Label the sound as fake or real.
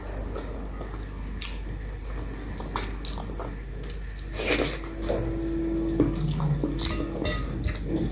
real